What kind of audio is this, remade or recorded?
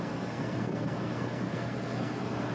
remade